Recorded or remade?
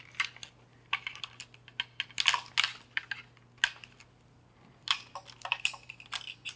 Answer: recorded